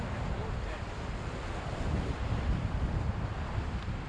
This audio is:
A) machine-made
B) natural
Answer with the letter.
B